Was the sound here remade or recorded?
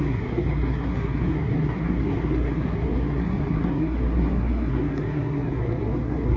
remade